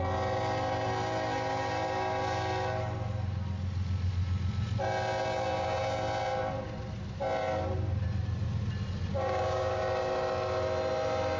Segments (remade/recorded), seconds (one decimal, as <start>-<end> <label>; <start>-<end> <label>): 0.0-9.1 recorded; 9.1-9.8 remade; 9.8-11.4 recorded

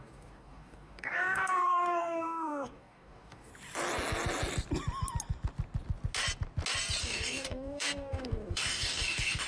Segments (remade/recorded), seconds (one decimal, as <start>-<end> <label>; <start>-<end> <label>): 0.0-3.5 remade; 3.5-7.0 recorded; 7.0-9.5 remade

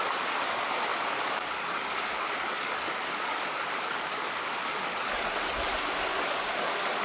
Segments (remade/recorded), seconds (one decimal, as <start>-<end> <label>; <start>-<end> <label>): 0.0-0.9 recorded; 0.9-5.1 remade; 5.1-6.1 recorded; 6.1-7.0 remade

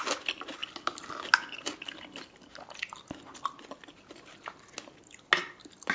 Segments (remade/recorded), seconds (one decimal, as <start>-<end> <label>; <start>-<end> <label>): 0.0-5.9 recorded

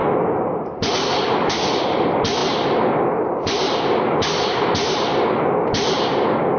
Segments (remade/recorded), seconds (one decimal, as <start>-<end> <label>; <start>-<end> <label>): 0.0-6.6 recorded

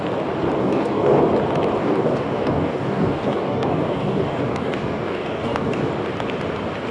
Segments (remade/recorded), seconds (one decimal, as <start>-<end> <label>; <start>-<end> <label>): 0.0-0.6 recorded; 0.6-1.2 remade; 1.2-1.8 recorded; 1.8-5.9 remade; 5.9-6.9 recorded